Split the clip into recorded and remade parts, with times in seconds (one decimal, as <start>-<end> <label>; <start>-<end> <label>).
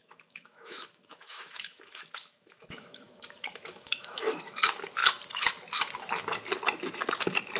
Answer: 0.0-4.6 remade; 4.6-7.6 recorded